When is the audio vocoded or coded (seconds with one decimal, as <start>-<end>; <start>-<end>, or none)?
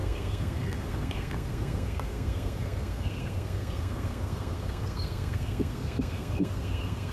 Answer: 0.0-7.1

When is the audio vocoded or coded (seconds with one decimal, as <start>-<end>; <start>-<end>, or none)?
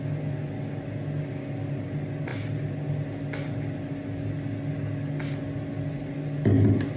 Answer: none